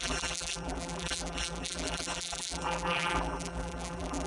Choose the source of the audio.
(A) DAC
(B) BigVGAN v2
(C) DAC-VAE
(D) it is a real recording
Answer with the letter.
B